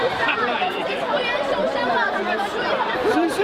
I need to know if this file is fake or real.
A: fake